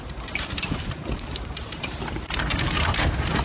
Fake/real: fake